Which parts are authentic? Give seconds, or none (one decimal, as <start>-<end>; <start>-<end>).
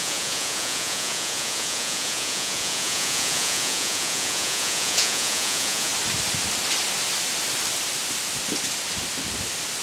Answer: 5.9-9.8